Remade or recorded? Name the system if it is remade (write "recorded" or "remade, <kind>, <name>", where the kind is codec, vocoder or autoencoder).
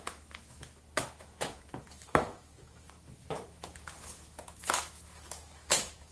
remade, autoencoder, DAC-VAE